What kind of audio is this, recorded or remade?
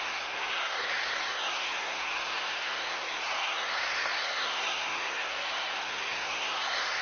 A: remade